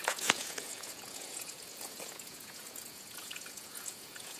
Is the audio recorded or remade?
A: remade